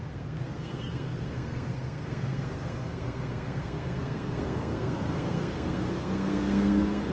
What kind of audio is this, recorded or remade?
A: remade